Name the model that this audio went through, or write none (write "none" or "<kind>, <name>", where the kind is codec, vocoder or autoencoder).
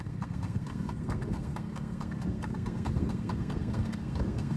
codec, SNAC